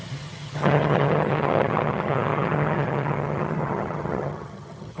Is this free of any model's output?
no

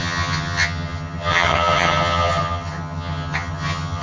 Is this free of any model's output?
no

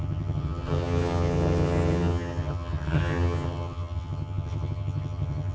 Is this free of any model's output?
no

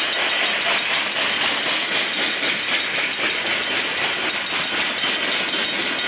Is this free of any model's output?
yes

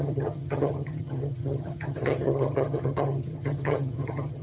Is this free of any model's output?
no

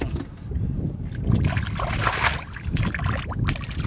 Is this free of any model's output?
yes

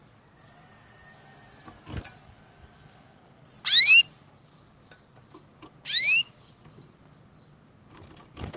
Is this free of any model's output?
yes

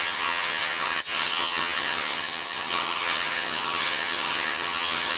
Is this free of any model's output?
no